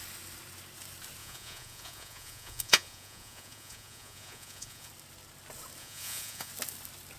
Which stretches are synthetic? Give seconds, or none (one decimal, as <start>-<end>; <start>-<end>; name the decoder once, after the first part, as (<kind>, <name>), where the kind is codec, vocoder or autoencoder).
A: 1.2-4.9 (vocoder, Vocos); 5.8-6.5